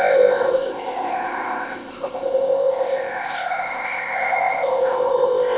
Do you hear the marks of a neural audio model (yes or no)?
yes